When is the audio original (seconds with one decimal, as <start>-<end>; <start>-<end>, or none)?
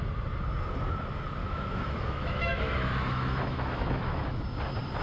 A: 0.0-1.4; 4.4-5.0